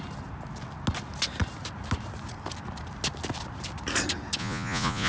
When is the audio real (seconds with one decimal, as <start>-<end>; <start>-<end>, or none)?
0.0-4.4